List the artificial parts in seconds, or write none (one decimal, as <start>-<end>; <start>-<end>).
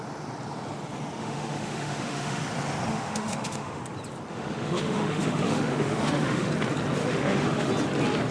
1.2-2.4; 2.9-3.8; 4.3-6.5; 7.0-7.7